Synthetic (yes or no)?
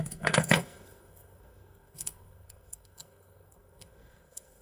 yes